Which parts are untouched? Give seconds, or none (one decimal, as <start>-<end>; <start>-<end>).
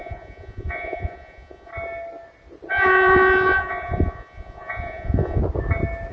1.7-2.7; 5.4-6.1